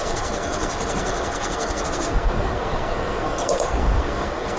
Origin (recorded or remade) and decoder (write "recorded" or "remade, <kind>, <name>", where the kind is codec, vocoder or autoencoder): remade, codec, SNAC